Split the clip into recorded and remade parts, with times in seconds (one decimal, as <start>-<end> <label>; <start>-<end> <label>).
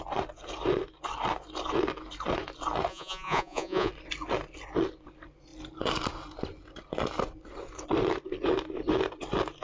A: 0.0-2.9 recorded; 2.9-3.9 remade; 3.9-9.6 recorded